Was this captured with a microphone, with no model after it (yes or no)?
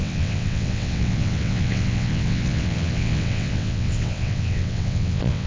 no